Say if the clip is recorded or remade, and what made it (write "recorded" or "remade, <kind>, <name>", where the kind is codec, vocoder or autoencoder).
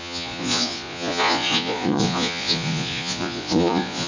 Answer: remade, vocoder, Vocos